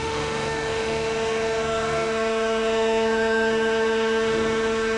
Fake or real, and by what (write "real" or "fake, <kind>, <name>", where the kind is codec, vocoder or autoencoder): fake, autoencoder, DAC-VAE